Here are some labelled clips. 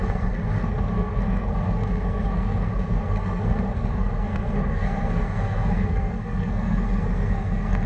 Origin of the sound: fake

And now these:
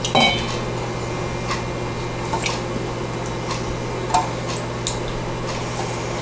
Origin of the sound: real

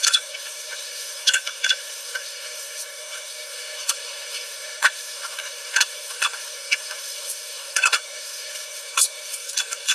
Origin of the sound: fake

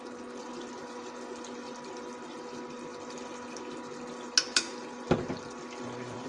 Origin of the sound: real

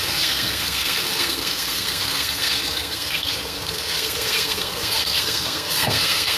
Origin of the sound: fake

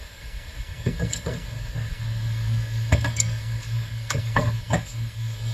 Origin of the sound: fake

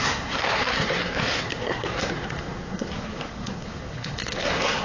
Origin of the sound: fake